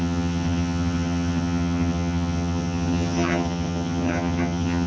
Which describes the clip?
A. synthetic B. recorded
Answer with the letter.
A